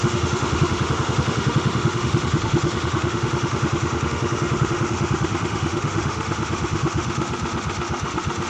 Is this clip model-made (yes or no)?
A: yes